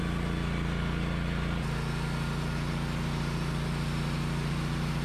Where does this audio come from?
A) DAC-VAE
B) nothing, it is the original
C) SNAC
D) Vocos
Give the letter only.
B